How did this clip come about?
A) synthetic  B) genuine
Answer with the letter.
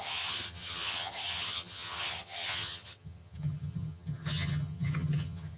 A